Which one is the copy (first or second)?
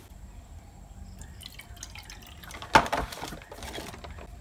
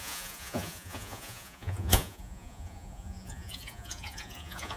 second